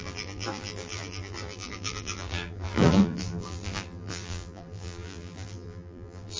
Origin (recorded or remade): remade